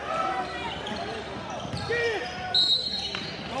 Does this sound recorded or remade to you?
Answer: recorded